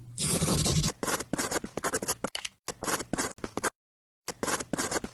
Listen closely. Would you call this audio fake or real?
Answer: fake